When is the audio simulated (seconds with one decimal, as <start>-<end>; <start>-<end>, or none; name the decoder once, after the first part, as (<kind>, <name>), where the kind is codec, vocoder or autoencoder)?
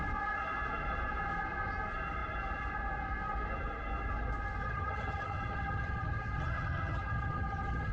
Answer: 4.6-7.9 (vocoder, HiFi-GAN)